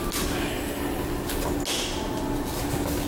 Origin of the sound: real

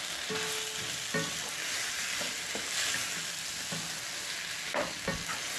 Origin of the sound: real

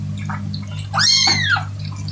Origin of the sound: real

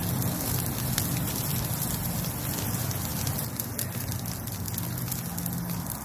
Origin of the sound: real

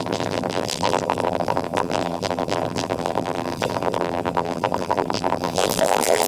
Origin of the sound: fake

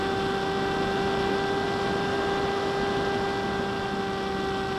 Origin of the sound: real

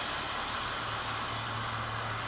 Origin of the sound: real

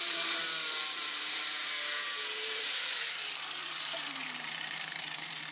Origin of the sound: fake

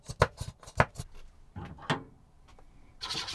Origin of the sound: real